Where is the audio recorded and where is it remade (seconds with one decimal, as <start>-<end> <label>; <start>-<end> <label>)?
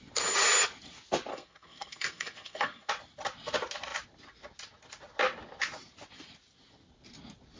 0.0-1.3 recorded; 1.3-2.9 remade; 2.9-7.6 recorded